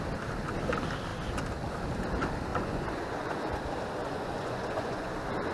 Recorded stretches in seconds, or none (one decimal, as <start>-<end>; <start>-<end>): 0.0-2.5; 3.6-4.0; 5.1-5.5